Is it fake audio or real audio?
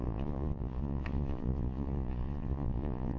fake